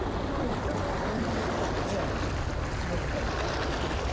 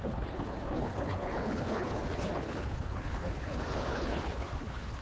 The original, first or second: first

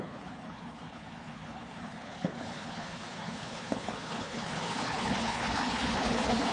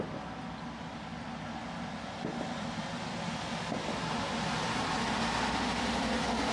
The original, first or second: second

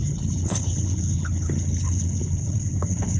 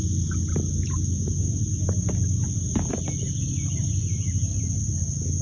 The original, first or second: second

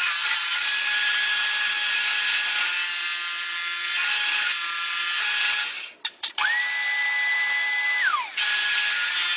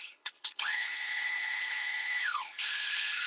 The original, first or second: first